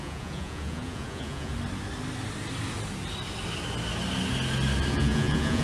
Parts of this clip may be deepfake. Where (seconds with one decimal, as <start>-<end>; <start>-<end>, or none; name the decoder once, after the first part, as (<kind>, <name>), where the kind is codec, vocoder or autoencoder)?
0.0-1.5 (vocoder, Vocos); 4.9-5.6

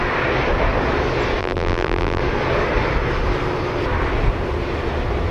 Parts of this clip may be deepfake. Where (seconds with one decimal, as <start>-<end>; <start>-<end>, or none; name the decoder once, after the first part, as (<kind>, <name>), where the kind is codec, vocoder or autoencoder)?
1.4-2.2 (vocoder, BigVGAN v2)

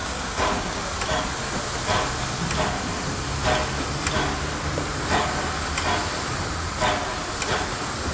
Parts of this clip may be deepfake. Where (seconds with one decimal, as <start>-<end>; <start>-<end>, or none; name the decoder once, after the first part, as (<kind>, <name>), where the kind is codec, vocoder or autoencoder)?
0.0-0.8 (codec, DAC)

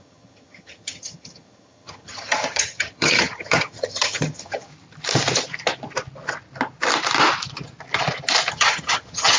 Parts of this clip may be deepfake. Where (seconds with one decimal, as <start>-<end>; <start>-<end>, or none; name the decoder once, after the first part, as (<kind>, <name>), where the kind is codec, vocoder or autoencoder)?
0.0-4.7 (vocoder, HiFi-GAN); 8.5-9.4

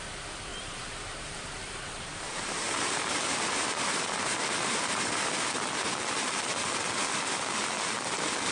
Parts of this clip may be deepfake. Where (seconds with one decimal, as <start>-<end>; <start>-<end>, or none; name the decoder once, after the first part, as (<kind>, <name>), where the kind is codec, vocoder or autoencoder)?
0.5-5.3 (vocoder, BigVGAN v2)